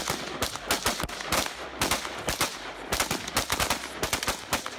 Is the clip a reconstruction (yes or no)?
no